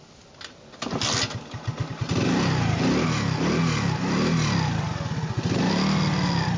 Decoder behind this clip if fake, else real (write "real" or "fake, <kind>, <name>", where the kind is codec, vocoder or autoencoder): real